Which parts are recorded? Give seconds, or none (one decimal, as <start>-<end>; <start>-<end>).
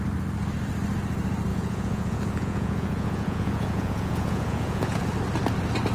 0.0-1.5; 5.0-5.9